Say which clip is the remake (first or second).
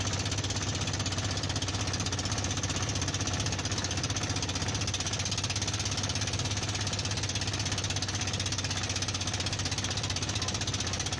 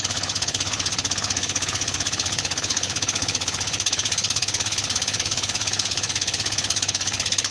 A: second